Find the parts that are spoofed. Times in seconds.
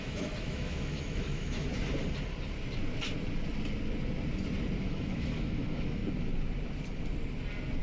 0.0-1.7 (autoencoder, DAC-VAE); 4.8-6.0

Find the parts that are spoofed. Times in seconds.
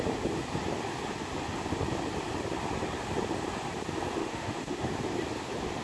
4.2-4.9 (autoencoder, DAC-VAE)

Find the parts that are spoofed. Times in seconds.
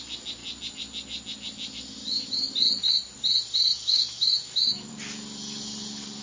3.7-4.9 (autoencoder, DAC-VAE)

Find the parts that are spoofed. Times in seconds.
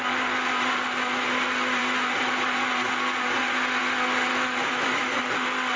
4.3-5.2 (autoencoder, DAC-VAE)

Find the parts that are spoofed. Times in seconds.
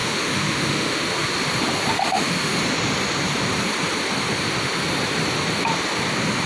0.0-1.1 (autoencoder, DAC-VAE); 1.9-2.5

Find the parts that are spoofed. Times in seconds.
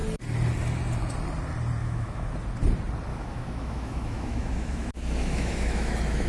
1.8-2.3 (autoencoder, DAC-VAE); 3.1-6.3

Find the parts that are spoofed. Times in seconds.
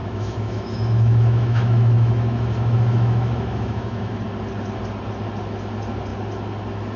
0.0-4.2 (autoencoder, DAC-VAE)